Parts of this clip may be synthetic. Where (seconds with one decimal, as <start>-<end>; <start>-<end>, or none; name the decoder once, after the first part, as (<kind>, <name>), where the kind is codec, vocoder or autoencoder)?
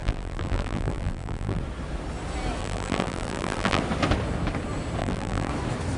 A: 0.0-1.6 (vocoder, BigVGAN v2); 2.6-3.8; 5.0-5.5